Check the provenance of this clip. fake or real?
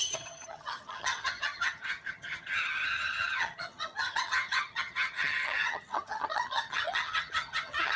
fake